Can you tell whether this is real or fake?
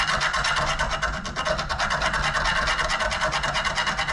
real